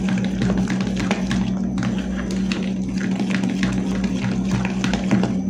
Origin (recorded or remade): recorded